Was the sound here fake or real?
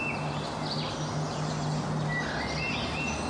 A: real